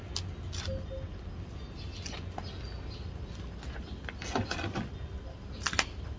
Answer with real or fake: real